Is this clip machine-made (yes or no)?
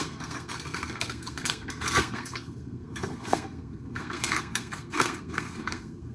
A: yes